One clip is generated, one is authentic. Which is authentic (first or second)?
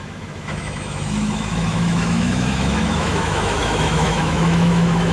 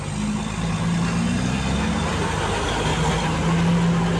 second